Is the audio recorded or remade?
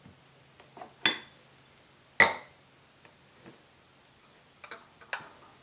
recorded